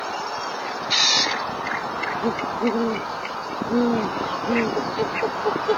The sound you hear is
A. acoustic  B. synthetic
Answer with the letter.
A